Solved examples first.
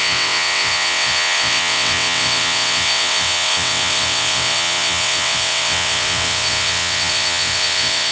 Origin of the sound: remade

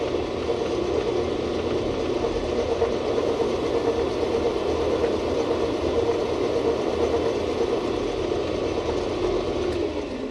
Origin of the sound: recorded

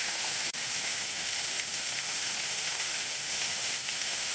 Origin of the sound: remade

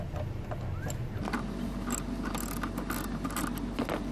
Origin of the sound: recorded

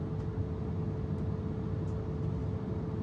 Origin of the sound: recorded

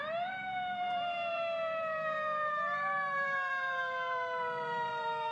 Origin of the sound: remade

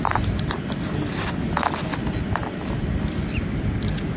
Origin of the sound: recorded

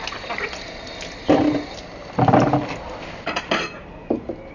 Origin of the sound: recorded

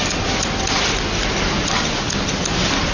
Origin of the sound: recorded